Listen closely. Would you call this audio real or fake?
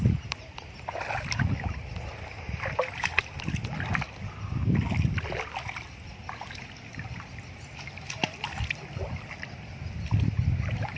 real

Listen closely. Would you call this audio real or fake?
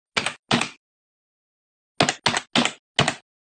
real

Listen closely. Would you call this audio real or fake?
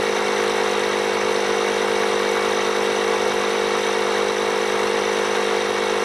real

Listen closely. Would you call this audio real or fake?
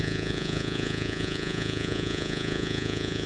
fake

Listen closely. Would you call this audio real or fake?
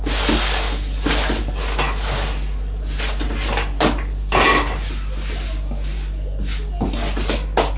real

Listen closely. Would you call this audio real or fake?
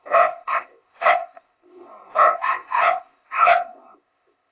fake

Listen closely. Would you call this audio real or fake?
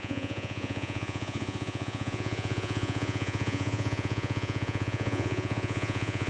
fake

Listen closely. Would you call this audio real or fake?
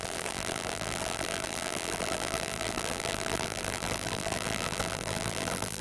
fake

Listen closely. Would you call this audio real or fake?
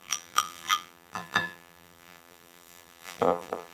fake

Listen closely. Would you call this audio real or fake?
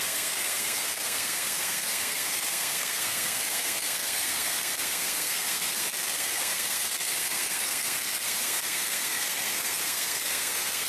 fake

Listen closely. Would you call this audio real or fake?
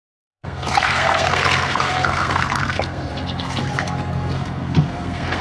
fake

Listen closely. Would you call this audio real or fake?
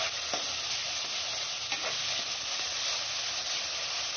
real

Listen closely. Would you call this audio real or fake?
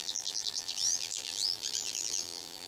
fake